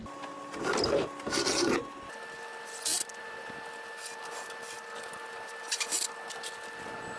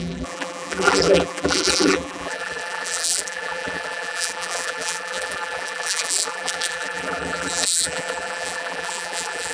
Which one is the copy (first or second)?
second